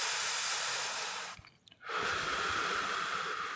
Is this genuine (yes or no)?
yes